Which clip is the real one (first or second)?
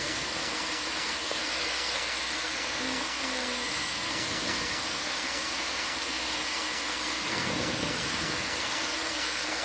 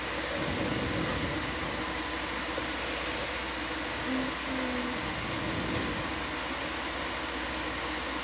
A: second